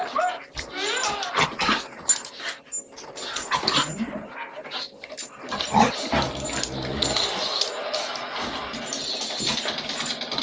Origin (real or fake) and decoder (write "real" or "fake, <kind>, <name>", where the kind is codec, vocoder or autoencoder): real